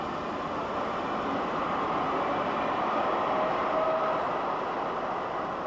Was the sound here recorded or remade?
recorded